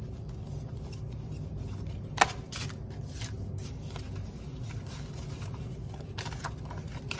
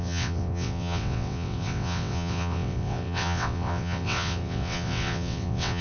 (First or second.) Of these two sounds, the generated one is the second